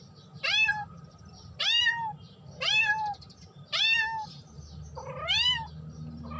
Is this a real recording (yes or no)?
yes